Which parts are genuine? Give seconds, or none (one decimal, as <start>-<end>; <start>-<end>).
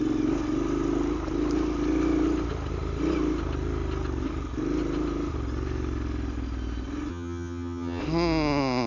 0.0-7.1; 8.0-8.9